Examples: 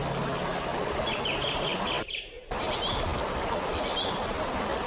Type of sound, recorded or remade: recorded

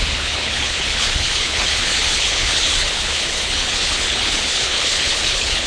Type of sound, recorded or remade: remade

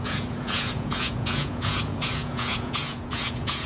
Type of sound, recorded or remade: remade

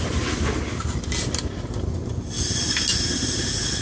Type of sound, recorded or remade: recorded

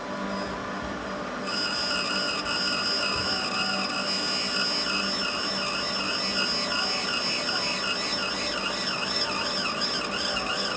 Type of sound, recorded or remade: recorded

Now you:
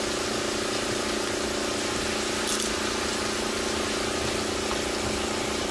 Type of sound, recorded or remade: recorded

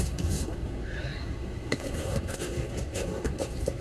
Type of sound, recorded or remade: remade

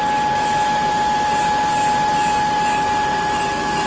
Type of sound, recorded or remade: recorded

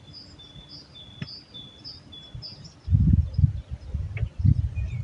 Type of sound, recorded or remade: recorded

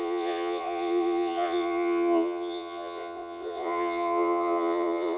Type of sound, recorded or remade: remade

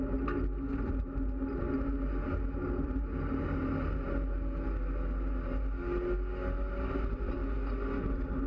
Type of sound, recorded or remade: recorded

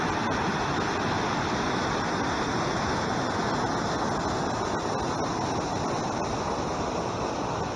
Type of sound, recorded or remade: recorded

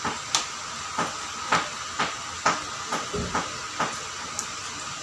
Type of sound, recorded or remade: recorded